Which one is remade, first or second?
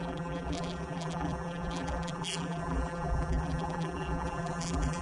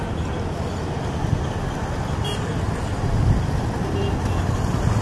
first